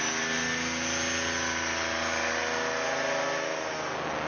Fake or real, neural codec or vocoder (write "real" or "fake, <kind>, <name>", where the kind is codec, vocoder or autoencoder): real